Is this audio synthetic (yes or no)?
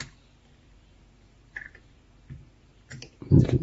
no